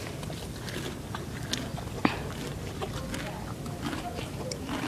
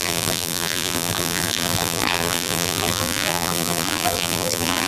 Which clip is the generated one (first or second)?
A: second